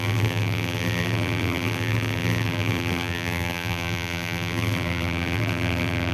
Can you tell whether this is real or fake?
fake